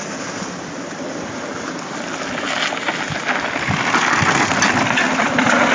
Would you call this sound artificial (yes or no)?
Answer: no